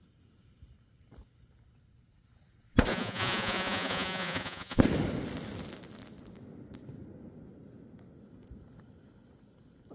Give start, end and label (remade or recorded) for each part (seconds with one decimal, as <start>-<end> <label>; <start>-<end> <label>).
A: 0.0-2.9 recorded; 2.9-4.8 remade; 4.8-9.9 recorded